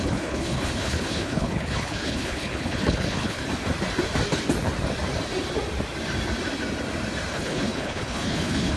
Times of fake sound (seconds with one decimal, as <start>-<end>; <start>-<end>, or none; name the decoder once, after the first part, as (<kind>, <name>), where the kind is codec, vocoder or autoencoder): 0.0-3.4 (codec, HILCodec); 7.3-8.8